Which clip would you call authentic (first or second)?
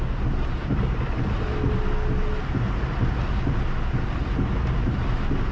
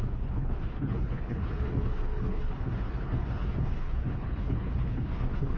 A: first